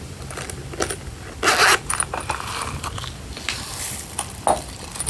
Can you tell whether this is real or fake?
real